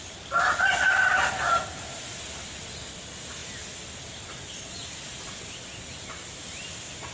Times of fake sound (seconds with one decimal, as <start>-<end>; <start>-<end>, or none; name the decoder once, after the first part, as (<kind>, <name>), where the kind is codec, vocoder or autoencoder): none